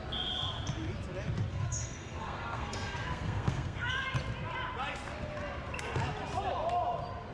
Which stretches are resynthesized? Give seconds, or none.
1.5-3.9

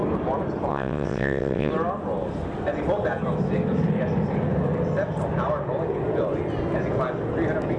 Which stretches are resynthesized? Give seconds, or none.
0.7-1.7

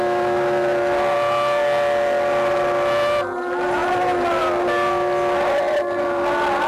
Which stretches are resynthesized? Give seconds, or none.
none